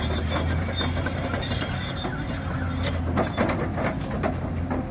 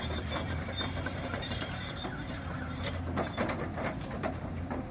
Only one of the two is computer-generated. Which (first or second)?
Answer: second